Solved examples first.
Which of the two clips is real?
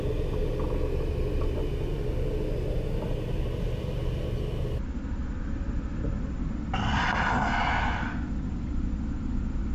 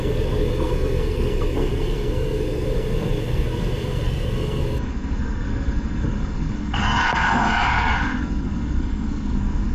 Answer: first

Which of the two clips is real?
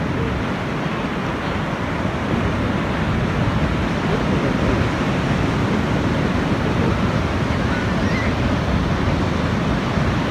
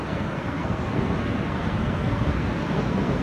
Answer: first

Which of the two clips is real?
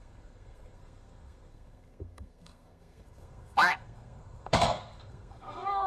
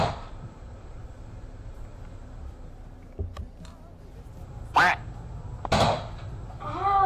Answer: second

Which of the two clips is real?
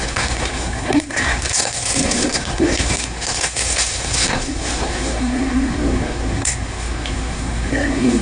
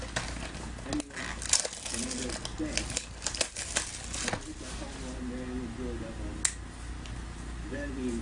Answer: second